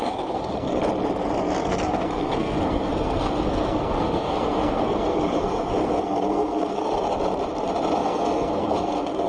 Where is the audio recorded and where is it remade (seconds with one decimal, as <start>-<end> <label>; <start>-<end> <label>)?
0.0-0.8 remade; 0.8-1.6 recorded; 1.6-6.8 remade; 6.8-8.0 recorded; 8.0-9.3 remade